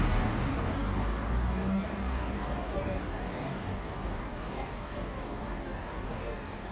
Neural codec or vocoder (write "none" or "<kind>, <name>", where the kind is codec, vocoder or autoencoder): codec, DAC